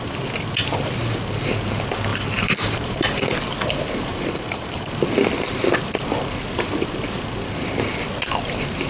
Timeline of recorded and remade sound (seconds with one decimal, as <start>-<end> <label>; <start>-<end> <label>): 0.0-2.1 recorded; 2.1-3.2 remade; 3.2-4.1 recorded; 4.1-4.9 remade; 4.9-8.9 recorded